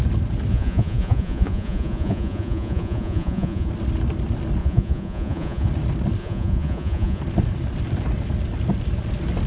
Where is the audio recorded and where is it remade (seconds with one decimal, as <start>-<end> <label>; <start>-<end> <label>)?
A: 0.0-0.5 recorded; 0.5-3.7 remade; 3.7-4.6 recorded; 4.6-5.7 remade; 5.7-6.2 recorded; 6.2-7.2 remade; 7.2-9.5 recorded